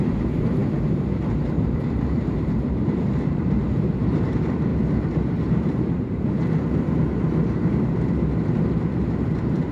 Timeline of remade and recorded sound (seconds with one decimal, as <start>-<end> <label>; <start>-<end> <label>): 0.0-9.7 remade